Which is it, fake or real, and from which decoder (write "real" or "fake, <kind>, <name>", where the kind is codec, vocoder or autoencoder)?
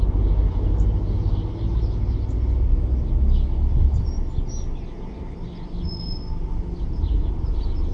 real